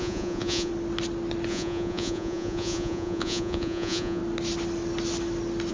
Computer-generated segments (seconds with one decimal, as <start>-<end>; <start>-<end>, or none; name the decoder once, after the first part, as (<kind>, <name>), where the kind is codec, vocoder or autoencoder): 0.0-0.7 (vocoder, Vocos); 1.5-4.2